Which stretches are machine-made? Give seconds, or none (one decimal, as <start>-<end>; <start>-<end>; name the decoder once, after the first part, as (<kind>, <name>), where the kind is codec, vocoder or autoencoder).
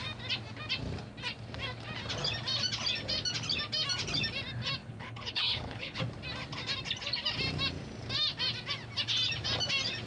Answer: 4.8-6.0 (codec, HILCodec)